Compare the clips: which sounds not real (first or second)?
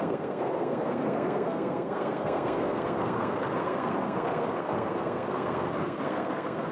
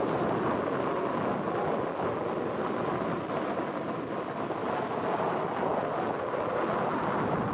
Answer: first